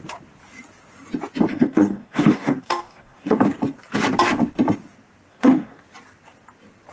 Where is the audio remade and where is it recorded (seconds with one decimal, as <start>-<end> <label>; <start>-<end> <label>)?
0.0-1.5 recorded; 1.5-3.4 remade; 3.4-5.3 recorded; 5.3-5.8 remade; 5.8-6.9 recorded